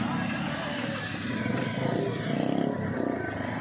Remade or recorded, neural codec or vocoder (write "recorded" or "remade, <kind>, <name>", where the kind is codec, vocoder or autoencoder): recorded